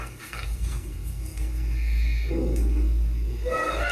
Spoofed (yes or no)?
yes